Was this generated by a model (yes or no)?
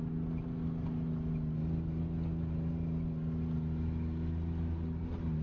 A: no